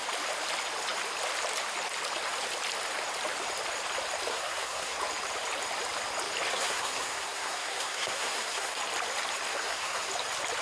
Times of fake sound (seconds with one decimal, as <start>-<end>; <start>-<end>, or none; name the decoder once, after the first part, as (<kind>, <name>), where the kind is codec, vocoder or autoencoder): 4.3-5.0 (codec, SNAC); 6.5-8.8; 9.5-10.1